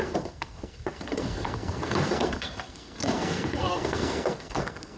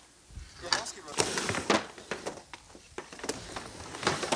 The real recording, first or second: second